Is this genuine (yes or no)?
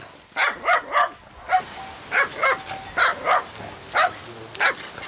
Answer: yes